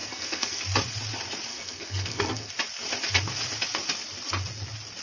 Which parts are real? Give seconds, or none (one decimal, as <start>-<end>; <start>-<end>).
0.6-1.5; 2.5-5.0